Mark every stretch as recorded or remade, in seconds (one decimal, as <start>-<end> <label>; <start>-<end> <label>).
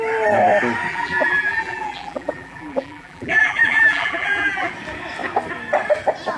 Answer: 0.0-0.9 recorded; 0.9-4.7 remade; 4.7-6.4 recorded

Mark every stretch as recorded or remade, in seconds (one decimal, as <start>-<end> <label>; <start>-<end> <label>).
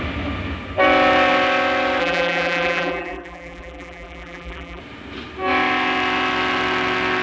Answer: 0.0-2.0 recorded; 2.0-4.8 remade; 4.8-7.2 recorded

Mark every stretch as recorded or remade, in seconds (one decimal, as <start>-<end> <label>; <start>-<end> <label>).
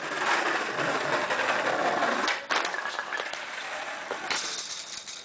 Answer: 0.0-1.8 recorded; 1.8-2.4 remade; 2.4-3.0 recorded; 3.0-3.6 remade; 3.6-5.2 recorded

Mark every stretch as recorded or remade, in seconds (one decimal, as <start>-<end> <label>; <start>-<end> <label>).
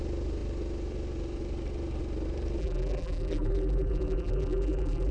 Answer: 0.0-2.6 recorded; 2.6-5.1 remade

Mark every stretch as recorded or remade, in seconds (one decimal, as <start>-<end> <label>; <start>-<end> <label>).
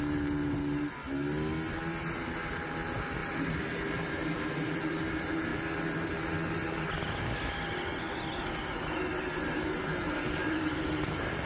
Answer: 0.0-1.0 remade; 1.0-2.1 recorded; 2.1-5.5 remade; 5.5-9.4 recorded; 9.4-11.5 remade